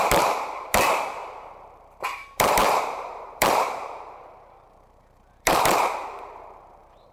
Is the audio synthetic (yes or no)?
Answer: yes